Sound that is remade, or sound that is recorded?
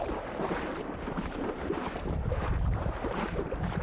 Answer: remade